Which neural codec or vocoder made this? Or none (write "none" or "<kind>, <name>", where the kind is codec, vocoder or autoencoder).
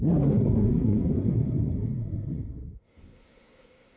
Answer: codec, SNAC